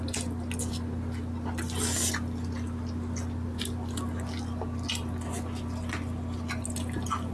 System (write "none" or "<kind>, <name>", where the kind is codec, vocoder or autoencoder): none